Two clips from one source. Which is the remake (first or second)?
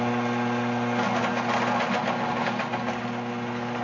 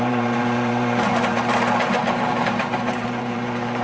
second